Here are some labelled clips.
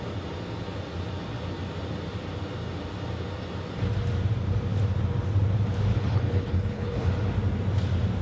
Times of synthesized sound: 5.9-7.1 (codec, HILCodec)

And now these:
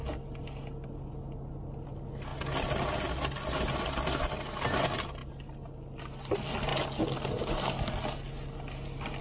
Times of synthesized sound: none

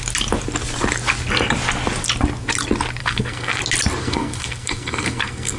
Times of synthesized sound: 3.0-3.6 (codec, SNAC); 4.0-5.6

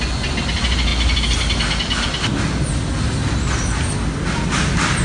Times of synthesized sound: none